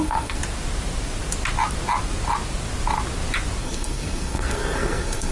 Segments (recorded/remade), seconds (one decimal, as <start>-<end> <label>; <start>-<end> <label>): 0.0-0.4 remade; 0.4-3.6 recorded; 3.6-5.3 remade